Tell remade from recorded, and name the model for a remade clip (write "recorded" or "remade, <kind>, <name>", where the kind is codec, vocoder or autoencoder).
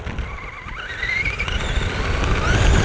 recorded